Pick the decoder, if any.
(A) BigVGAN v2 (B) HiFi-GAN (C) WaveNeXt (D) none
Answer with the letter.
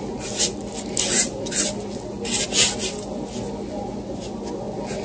D